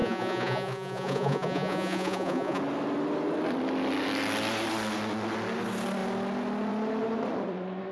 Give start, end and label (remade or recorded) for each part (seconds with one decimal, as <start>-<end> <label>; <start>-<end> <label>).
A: 0.0-2.6 remade; 2.6-7.9 recorded